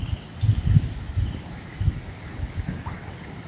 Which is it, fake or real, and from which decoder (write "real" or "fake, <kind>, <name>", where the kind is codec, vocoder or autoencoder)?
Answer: real